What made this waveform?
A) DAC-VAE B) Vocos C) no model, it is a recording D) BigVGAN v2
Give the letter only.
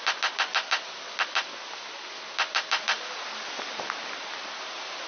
C